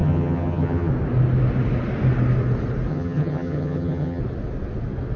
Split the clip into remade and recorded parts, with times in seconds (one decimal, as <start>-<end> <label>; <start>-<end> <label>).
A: 0.0-0.9 remade; 0.9-2.9 recorded; 2.9-4.2 remade; 4.2-5.2 recorded